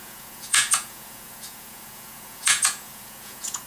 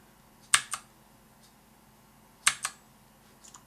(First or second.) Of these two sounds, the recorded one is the second